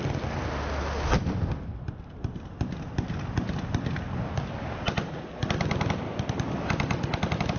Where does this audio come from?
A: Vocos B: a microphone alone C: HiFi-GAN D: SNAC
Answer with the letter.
B